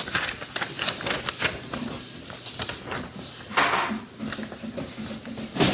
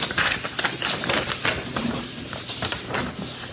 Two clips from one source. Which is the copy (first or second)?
second